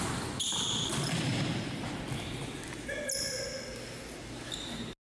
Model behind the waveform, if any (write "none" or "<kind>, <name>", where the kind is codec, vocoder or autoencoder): none